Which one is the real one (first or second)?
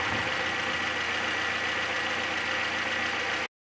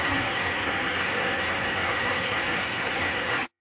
first